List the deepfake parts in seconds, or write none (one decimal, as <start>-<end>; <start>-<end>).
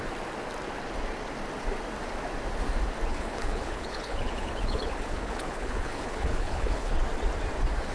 3.1-7.0